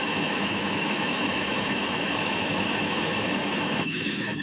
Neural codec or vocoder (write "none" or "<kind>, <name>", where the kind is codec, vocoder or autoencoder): autoencoder, DAC-VAE